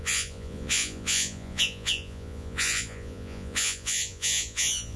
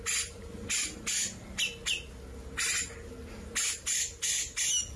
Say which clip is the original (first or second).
second